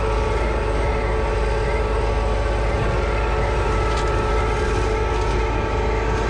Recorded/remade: recorded